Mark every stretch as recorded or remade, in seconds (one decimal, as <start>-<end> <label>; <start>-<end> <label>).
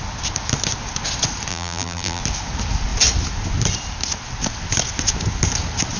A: 0.0-1.5 recorded; 1.5-2.2 remade; 2.2-6.0 recorded